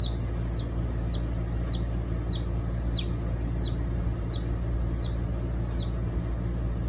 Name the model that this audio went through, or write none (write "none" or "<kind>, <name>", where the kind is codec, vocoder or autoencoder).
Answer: none